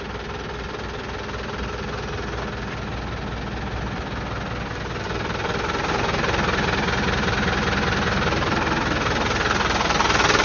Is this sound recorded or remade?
recorded